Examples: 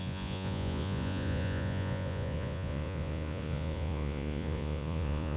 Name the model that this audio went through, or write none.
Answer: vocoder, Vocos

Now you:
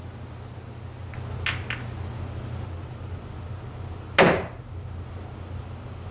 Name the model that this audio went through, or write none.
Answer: none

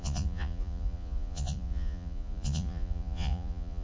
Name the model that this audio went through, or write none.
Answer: vocoder, Vocos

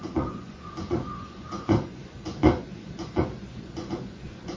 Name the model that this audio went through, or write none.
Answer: vocoder, Vocos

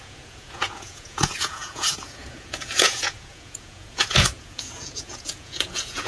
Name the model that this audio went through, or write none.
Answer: vocoder, Vocos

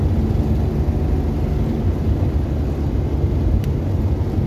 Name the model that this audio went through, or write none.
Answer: none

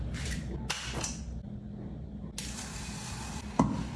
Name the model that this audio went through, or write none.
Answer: none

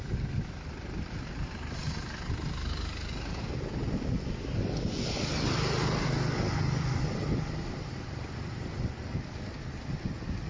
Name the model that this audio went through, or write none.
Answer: none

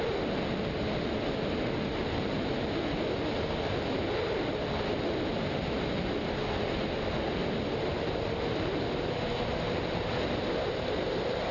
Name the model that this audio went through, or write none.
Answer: none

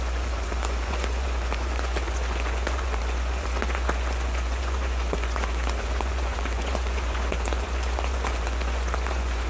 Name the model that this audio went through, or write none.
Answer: vocoder, Vocos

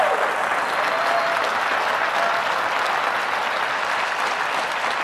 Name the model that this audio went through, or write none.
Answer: none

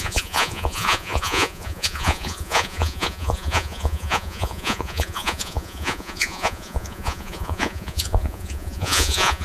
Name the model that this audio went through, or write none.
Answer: vocoder, Vocos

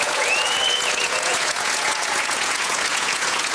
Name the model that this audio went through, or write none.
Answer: vocoder, Vocos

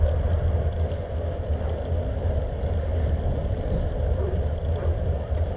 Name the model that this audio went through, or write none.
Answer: none